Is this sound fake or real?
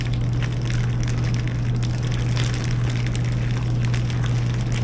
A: real